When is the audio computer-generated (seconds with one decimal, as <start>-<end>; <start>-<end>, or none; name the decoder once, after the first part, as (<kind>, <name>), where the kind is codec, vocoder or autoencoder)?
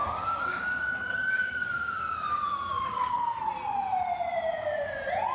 0.0-3.2 (codec, DAC)